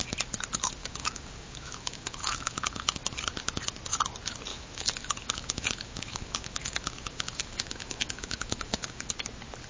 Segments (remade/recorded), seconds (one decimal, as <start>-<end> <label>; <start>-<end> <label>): 0.0-0.8 recorded; 0.8-3.0 remade; 3.0-4.5 recorded; 4.5-9.1 remade; 9.1-9.7 recorded